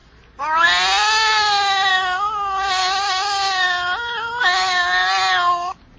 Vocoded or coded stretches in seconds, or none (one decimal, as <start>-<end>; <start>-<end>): none